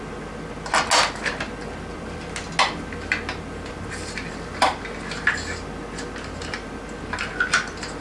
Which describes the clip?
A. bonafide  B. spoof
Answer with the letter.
A